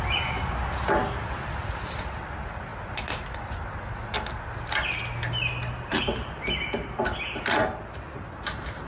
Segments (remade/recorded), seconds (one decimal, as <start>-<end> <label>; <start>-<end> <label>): 0.0-7.6 recorded; 7.6-8.4 remade; 8.4-8.9 recorded